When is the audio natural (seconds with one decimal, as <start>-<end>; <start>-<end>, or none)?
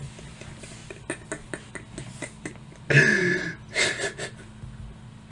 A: 0.0-5.3